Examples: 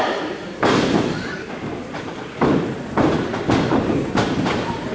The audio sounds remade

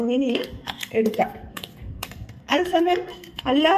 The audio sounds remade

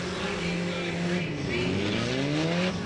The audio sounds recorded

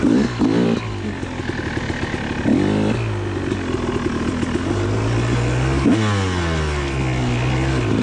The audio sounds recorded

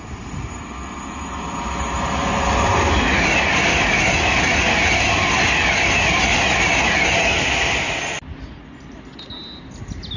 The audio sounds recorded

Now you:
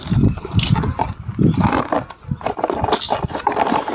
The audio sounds recorded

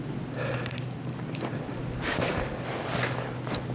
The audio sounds recorded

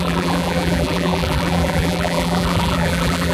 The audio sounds remade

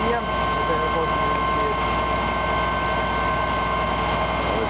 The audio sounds recorded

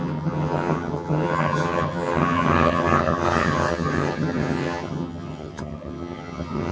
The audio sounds remade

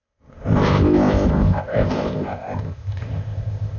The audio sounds remade